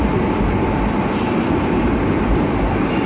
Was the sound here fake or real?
real